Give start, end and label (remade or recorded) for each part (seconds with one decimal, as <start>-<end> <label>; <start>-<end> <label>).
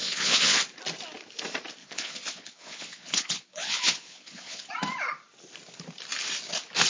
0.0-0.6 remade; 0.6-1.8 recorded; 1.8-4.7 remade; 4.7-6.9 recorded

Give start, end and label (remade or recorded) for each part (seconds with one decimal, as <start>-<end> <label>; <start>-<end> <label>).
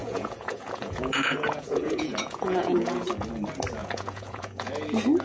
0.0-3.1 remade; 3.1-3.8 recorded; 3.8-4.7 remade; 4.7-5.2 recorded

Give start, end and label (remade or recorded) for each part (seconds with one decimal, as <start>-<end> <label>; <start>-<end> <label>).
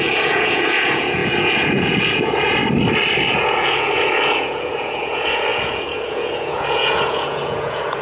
0.0-2.6 remade; 2.6-3.3 recorded; 3.3-8.0 remade